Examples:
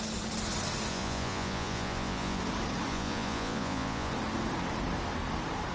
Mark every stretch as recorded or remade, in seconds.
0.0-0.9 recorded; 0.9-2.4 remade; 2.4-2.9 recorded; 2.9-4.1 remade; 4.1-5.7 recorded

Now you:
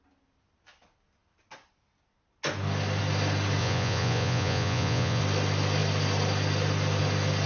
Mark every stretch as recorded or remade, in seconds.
0.0-3.6 recorded; 3.6-5.2 remade; 5.2-7.5 recorded

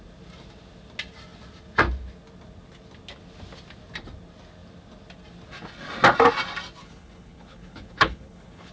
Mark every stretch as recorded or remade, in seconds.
0.0-6.8 recorded; 6.8-8.7 remade

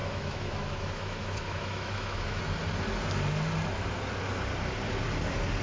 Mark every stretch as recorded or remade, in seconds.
0.0-2.4 remade; 2.4-5.6 recorded